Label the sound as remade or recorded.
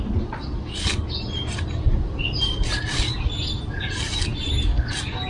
recorded